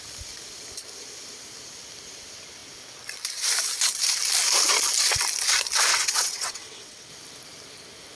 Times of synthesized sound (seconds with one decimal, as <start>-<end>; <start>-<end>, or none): 5.9-7.1

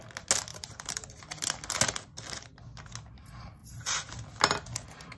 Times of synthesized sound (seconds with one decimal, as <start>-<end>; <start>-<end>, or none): 0.5-1.1; 3.6-4.1

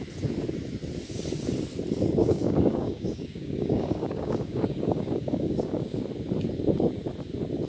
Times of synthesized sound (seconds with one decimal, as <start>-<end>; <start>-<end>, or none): 2.2-6.0

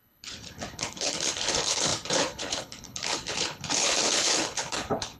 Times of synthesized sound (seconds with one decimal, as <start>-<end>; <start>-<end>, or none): 0.0-5.2

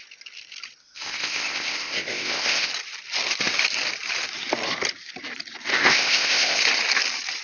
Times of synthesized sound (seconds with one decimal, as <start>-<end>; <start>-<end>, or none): 0.8-2.7; 5.8-6.6

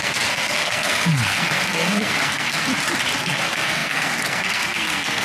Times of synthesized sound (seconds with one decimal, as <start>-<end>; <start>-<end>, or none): 0.0-2.7; 3.2-5.2

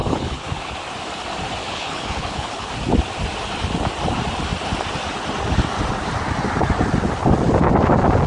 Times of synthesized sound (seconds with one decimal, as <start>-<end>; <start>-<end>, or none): 0.0-0.8; 1.6-2.7

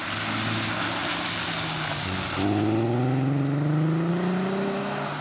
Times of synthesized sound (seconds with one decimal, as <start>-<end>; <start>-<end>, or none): none